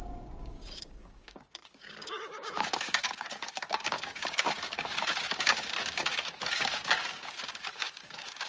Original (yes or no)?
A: no